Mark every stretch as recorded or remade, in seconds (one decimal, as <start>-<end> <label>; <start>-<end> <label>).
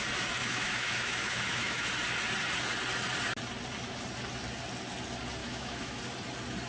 0.0-0.4 recorded; 0.4-1.9 remade; 1.9-5.4 recorded; 5.4-6.0 remade; 6.0-6.7 recorded